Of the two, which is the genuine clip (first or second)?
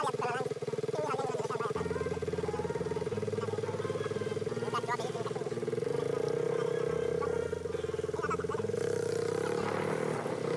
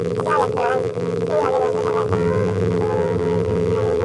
first